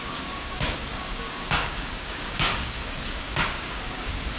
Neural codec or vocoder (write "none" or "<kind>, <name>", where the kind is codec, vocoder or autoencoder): codec, DAC